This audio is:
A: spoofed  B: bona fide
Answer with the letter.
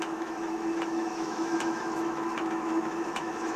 A